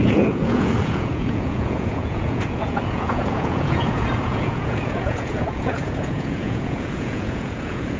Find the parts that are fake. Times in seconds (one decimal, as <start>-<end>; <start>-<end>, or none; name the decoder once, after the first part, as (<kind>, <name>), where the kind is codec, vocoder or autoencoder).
0.0-8.0 (vocoder, Vocos)